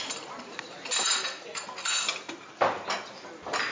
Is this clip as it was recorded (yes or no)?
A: yes